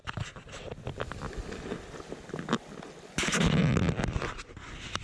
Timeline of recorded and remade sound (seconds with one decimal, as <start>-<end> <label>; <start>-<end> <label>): 0.0-5.0 recorded